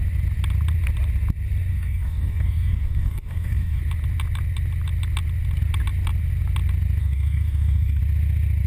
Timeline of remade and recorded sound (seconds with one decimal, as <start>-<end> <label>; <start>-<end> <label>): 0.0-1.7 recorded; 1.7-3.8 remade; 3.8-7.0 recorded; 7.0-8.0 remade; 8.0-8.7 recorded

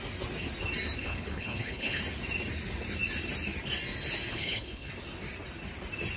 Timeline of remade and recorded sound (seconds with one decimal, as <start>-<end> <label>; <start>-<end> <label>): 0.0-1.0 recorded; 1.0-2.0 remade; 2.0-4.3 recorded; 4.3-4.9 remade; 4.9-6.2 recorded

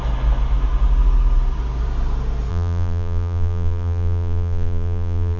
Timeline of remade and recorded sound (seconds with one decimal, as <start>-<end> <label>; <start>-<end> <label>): 0.0-2.5 recorded; 2.5-5.4 remade

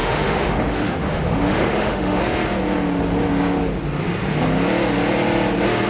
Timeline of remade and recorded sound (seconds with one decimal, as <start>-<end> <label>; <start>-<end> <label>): 0.0-2.2 remade; 2.2-5.9 recorded

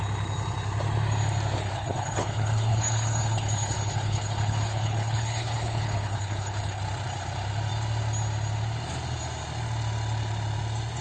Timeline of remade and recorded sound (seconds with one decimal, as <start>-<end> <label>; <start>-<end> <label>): 0.0-1.6 recorded; 1.6-6.8 remade; 6.8-11.0 recorded

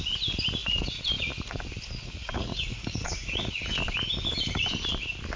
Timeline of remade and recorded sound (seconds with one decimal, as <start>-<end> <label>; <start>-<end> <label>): 0.0-0.6 recorded; 0.6-3.7 remade; 3.7-5.4 recorded

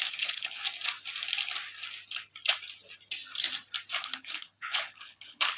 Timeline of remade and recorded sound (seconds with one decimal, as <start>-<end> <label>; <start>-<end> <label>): 0.0-0.6 remade; 0.6-4.0 recorded; 4.0-5.6 remade

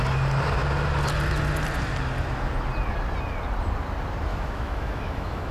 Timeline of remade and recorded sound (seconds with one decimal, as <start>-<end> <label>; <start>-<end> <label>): 0.0-4.3 recorded; 4.3-5.5 remade